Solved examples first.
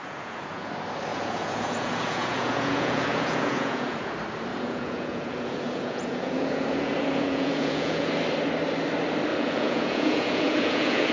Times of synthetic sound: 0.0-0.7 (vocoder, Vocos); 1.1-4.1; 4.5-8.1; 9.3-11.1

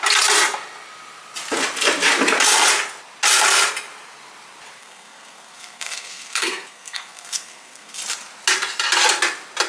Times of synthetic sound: 4.8-8.0 (codec, SNAC)

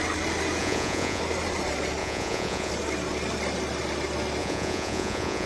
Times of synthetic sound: 0.6-1.2 (vocoder, Vocos); 2.0-2.7; 4.4-5.5

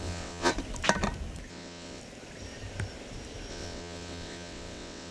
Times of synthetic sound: 0.0-0.5 (vocoder, WaveNeXt); 1.5-2.0; 3.5-5.1

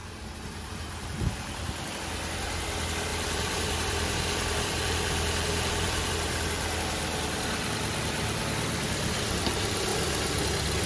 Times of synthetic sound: 0.0-1.9 (vocoder, BigVGAN v2); 3.1-6.1

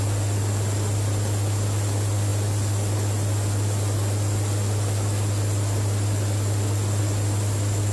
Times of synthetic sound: none